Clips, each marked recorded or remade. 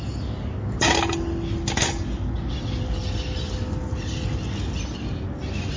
recorded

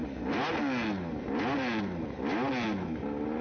recorded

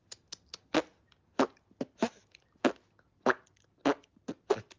recorded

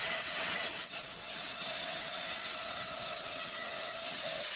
remade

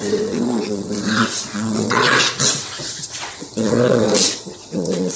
remade